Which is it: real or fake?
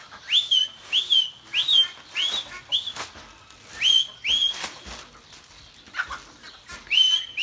real